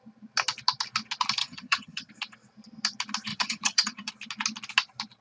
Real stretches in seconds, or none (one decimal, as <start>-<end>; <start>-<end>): 0.0-1.4; 2.1-3.3; 4.1-5.2